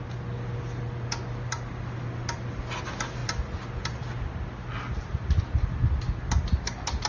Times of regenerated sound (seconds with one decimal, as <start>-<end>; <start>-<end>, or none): none